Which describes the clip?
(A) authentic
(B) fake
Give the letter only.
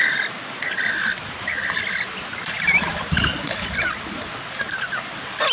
A